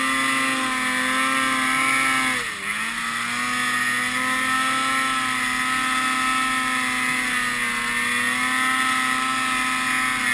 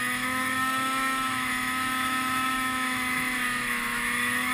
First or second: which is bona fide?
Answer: first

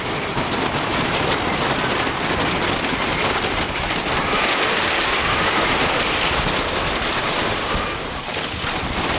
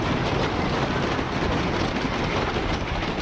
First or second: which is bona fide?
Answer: second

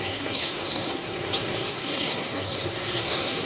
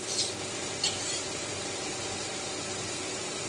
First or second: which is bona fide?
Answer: second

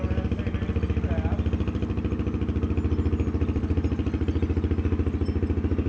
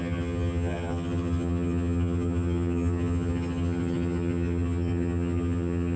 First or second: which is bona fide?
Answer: first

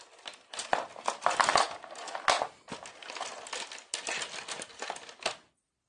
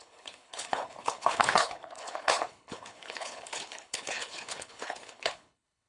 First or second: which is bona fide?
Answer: first